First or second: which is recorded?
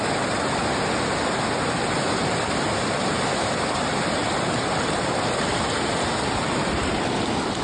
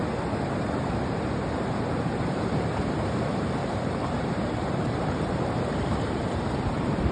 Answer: first